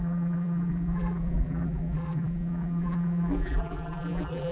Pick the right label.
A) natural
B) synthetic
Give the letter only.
B